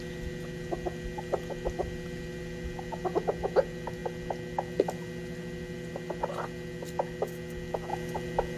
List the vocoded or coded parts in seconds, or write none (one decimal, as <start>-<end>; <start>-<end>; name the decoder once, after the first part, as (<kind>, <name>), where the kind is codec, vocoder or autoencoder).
none